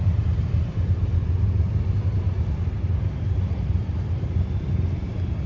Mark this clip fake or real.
fake